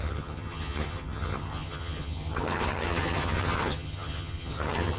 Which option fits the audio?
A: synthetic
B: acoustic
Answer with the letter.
A